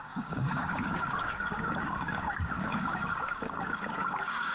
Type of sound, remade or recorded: remade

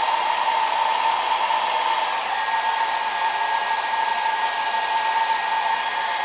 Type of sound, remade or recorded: recorded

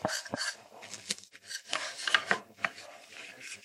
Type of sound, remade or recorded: remade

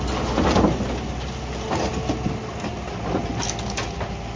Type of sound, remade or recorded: recorded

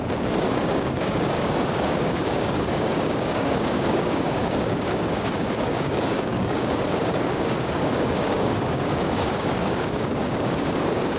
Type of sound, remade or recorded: remade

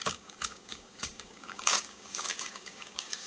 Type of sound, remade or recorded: remade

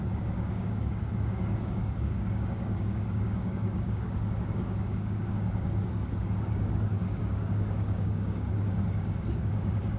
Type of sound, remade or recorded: remade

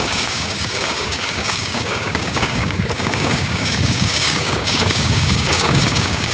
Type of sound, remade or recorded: remade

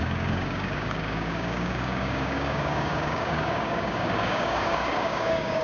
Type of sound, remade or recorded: remade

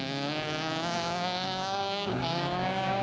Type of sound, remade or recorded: remade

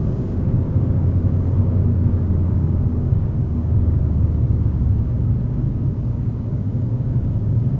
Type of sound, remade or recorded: remade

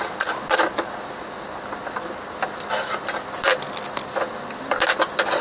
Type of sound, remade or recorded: recorded